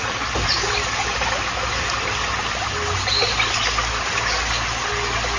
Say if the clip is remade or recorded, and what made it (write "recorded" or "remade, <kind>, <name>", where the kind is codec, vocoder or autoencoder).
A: recorded